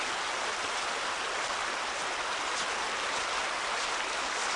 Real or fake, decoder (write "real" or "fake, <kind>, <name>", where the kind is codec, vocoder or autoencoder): real